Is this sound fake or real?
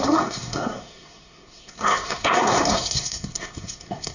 fake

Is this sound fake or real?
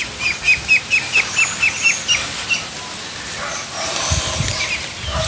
real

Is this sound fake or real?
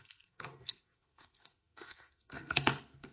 fake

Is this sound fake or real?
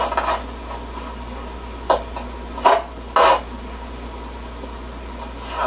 real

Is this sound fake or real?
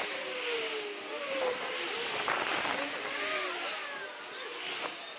real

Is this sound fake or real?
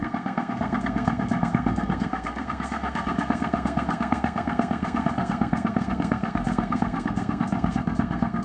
fake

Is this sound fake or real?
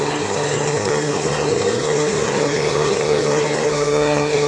fake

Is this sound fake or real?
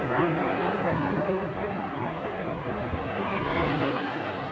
fake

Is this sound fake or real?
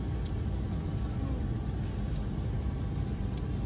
real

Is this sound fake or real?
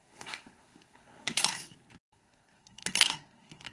fake